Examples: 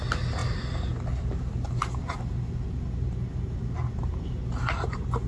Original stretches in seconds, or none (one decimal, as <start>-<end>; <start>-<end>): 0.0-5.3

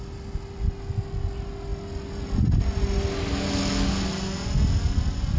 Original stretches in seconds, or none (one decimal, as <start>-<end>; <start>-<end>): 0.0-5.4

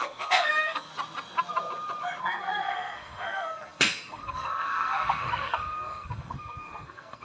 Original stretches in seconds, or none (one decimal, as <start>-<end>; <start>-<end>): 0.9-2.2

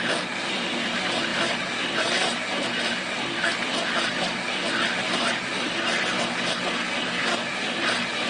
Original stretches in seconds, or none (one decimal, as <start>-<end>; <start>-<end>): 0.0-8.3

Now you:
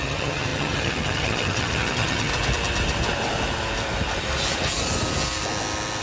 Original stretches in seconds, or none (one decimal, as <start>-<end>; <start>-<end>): 2.3-6.0